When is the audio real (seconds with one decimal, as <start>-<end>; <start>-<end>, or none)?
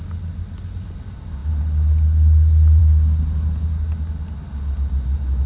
0.0-5.5